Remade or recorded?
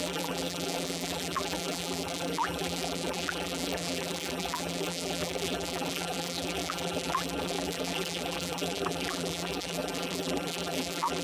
remade